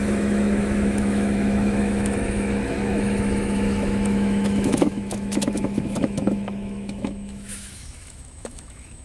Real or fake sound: fake